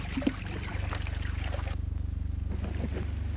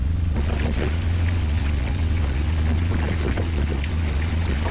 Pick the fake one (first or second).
second